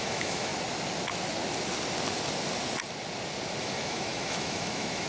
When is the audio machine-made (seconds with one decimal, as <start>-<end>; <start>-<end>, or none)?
0.0-0.5; 3.6-5.1